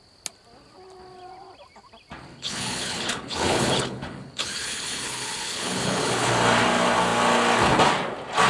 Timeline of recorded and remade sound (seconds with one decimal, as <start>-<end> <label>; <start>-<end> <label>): 0.0-2.3 recorded; 2.3-6.3 remade; 6.3-8.5 recorded